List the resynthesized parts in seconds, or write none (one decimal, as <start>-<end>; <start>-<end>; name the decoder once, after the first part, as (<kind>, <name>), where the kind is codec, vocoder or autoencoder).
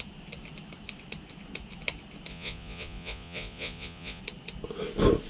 2.3-4.2 (vocoder, Vocos)